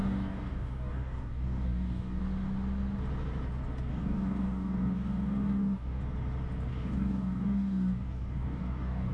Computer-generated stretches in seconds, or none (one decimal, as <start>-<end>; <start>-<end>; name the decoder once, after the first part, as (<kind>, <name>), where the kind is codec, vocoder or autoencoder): 0.0-2.2 (codec, DAC); 3.9-6.0; 6.7-9.1